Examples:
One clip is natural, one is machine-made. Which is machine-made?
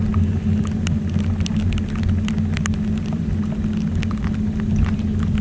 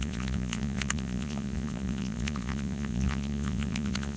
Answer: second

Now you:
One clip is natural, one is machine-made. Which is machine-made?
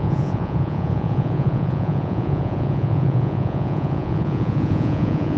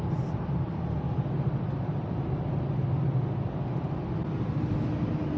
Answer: first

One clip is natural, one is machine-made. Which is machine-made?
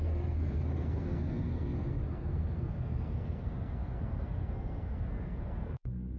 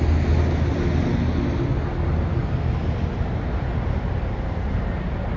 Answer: first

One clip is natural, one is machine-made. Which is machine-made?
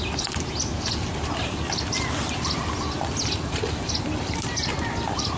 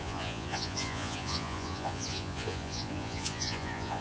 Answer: second